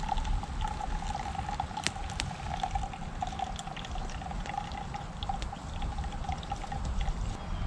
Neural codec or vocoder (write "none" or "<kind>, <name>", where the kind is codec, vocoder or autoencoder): none